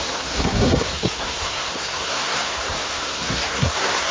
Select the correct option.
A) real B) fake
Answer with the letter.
B